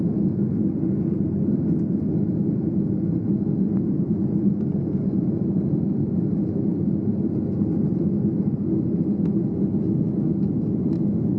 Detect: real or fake real